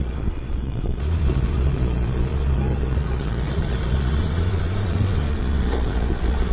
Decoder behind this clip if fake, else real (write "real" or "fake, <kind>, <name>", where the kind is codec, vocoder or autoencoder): fake, vocoder, Vocos